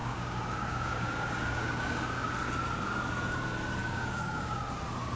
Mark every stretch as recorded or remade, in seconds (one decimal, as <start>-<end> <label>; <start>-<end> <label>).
0.0-2.3 remade; 2.3-3.8 recorded; 3.8-4.6 remade; 4.6-5.2 recorded